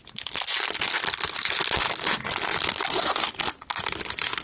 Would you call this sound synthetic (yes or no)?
no